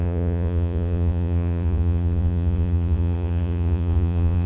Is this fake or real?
fake